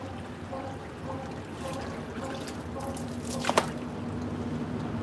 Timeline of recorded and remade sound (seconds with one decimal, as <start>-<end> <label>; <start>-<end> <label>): 0.0-5.0 recorded